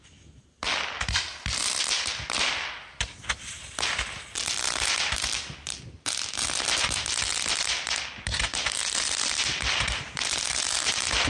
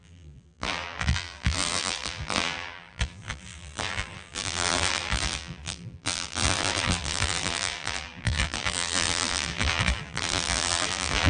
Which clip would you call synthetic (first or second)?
second